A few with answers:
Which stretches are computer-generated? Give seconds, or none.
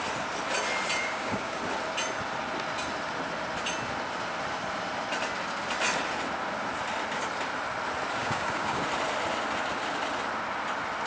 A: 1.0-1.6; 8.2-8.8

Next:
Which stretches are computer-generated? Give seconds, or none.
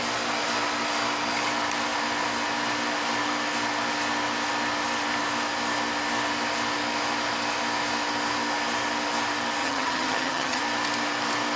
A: 9.6-10.6